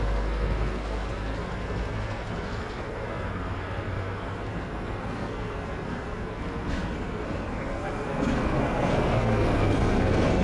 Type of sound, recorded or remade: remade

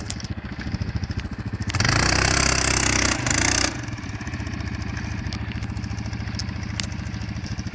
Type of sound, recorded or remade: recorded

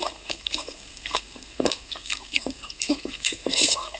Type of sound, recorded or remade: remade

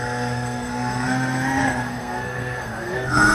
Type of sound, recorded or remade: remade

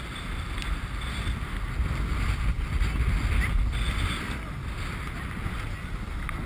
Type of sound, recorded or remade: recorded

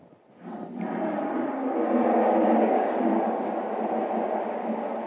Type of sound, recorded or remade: recorded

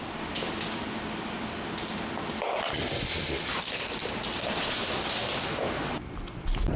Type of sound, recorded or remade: recorded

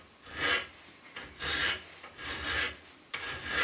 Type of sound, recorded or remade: recorded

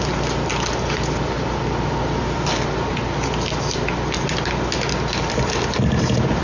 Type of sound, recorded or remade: recorded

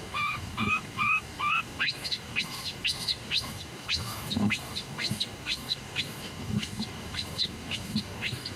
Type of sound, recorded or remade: remade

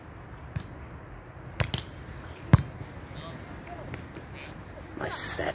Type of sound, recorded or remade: recorded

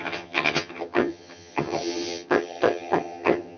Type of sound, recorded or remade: remade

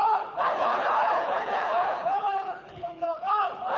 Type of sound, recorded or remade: remade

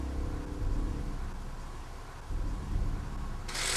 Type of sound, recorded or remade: recorded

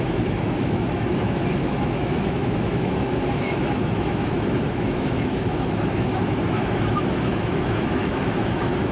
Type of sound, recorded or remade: remade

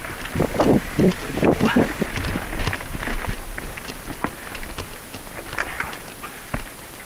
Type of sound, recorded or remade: recorded